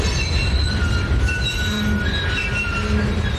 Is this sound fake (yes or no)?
no